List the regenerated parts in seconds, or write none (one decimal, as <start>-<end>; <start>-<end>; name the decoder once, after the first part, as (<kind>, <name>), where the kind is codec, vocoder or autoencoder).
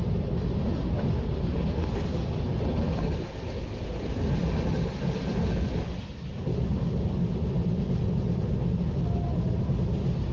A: none